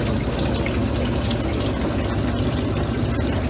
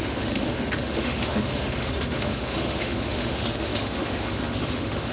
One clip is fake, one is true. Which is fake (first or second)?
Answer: second